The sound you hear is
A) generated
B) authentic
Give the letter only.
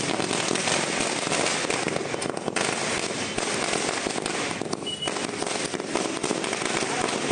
B